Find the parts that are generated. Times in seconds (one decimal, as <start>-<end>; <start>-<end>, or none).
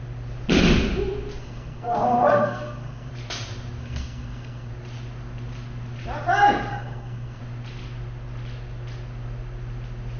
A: 1.4-3.1; 3.8-4.7; 6.7-7.4